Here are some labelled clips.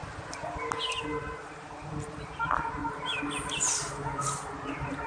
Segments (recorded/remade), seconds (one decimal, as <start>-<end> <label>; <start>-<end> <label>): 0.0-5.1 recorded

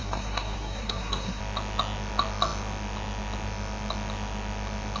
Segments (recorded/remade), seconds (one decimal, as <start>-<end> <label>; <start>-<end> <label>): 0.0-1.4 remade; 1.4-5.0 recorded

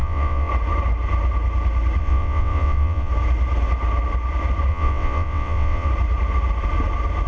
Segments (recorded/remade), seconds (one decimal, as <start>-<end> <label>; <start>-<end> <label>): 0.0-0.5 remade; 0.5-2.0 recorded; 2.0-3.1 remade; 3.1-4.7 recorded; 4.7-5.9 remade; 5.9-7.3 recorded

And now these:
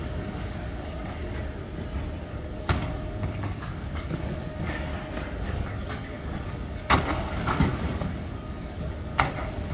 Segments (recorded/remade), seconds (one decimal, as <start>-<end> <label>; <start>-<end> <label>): 0.0-1.2 remade; 1.2-2.3 recorded; 2.3-4.9 remade; 4.9-5.4 recorded; 5.4-9.1 remade; 9.1-9.7 recorded